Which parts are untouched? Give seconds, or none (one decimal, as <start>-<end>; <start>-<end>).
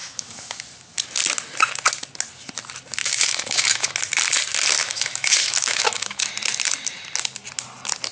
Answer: 0.6-3.0; 3.9-4.8; 6.3-8.1